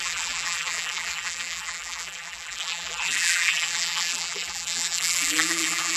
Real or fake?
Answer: fake